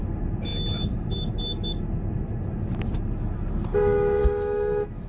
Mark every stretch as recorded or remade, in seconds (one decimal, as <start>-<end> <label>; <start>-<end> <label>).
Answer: 0.0-4.2 recorded; 4.2-5.1 remade